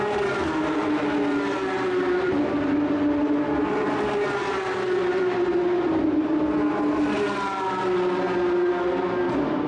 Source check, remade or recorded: recorded